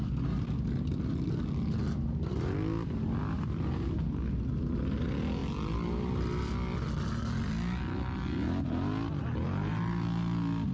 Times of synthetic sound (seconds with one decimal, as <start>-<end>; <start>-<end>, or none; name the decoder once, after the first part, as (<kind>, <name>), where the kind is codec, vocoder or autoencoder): none

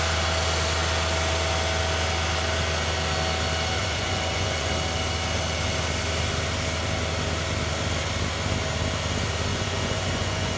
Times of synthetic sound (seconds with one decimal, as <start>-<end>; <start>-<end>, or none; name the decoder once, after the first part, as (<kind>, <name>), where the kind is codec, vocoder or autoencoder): 3.8-4.7 (vocoder, Vocos); 9.5-10.6

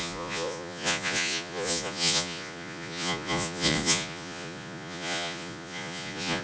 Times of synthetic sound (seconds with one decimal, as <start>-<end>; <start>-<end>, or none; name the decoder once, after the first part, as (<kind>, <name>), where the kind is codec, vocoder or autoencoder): 0.0-6.4 (vocoder, Vocos)